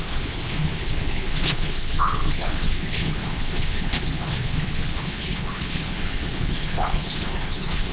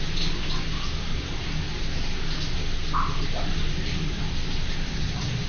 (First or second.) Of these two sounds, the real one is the second